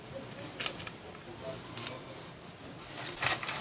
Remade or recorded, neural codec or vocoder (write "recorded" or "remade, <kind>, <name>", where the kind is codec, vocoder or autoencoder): recorded